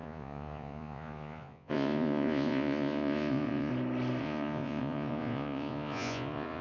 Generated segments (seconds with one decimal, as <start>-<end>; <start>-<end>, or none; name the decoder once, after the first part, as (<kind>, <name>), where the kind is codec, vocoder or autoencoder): 0.0-3.7 (vocoder, Vocos); 4.2-6.6